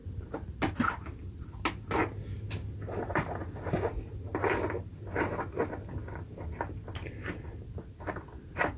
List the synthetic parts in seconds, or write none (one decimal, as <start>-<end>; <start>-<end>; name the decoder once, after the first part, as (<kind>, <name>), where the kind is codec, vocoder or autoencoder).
none